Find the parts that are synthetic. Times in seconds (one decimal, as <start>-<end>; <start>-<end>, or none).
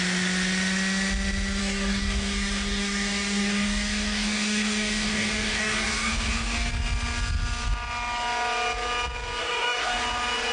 1.6-6.7; 9.4-10.0